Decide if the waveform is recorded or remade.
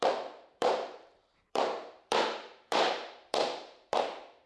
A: remade